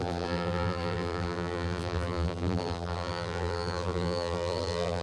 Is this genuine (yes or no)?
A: no